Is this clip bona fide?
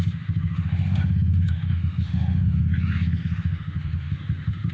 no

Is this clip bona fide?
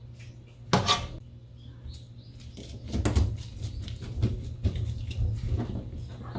yes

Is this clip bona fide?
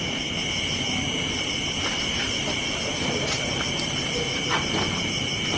yes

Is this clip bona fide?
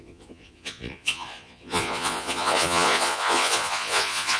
no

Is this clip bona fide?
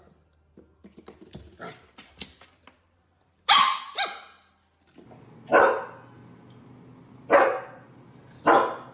yes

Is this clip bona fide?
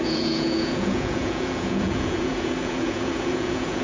no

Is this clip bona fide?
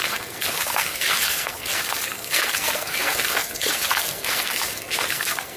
no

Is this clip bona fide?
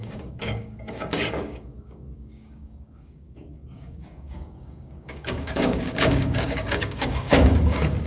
no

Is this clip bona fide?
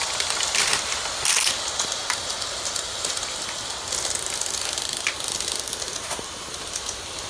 yes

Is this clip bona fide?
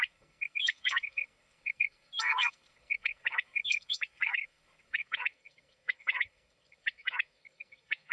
no